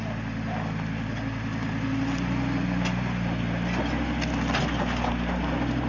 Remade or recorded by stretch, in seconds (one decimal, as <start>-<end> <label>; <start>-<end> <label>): 0.0-5.9 recorded